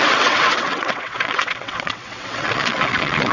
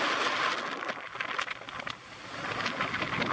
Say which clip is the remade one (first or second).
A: first